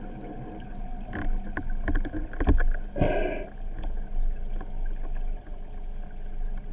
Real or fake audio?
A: real